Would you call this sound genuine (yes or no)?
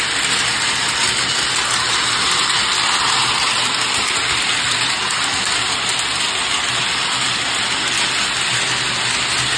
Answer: yes